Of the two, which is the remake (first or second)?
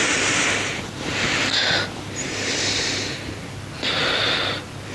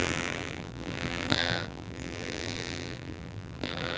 second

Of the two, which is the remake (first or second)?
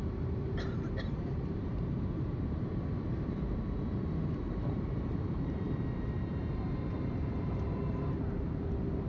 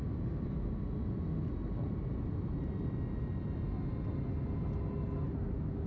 first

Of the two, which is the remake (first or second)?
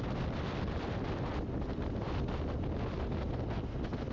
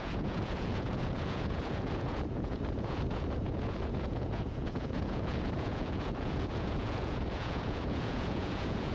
second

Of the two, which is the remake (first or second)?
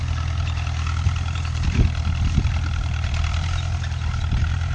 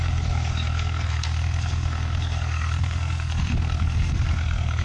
second